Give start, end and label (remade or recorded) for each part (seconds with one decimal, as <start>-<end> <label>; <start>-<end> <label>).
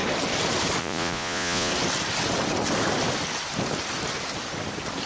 0.0-0.8 recorded; 0.8-1.7 remade; 1.7-5.1 recorded